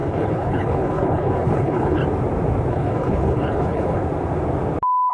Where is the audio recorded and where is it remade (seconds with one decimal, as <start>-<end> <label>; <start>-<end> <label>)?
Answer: 0.0-2.0 remade; 2.0-2.7 recorded; 2.7-4.0 remade; 4.0-5.1 recorded